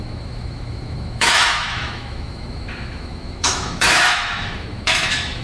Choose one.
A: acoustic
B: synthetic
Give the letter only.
B